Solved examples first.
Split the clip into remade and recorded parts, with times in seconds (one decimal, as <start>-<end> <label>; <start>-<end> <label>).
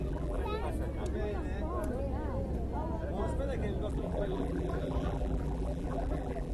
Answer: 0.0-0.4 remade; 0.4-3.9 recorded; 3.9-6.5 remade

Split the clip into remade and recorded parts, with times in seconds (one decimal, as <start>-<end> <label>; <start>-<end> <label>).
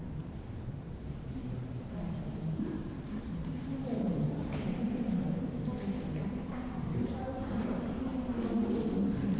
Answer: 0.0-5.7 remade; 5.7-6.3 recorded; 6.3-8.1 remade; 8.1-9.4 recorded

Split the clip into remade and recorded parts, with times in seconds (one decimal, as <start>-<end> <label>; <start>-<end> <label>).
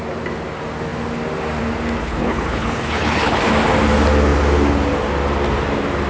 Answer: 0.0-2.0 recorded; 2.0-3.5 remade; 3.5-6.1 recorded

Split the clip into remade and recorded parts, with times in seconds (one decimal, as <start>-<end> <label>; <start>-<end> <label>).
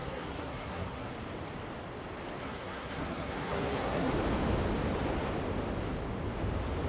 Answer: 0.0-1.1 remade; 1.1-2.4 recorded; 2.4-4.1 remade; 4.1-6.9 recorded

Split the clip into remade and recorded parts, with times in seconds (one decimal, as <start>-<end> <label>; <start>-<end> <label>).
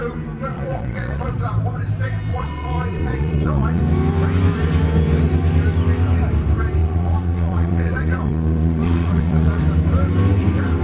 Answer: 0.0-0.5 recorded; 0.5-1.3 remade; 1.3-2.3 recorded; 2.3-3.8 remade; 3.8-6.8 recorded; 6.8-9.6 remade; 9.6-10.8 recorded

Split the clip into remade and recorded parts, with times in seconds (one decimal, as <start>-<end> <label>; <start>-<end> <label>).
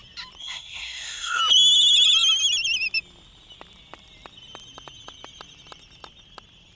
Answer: 0.0-0.4 recorded; 0.4-1.4 remade; 1.4-6.7 recorded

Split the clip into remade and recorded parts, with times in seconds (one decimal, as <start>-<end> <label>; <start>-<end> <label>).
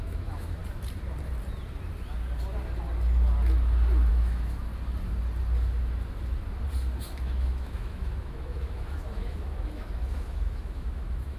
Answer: 0.0-0.6 remade; 0.6-4.1 recorded; 4.1-4.7 remade; 4.7-7.2 recorded; 7.2-11.4 remade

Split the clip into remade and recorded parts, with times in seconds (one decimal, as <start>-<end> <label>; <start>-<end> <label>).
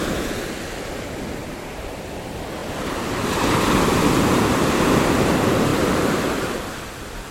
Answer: 0.0-1.4 recorded; 1.4-2.2 remade; 2.2-5.7 recorded; 5.7-6.6 remade; 6.6-7.3 recorded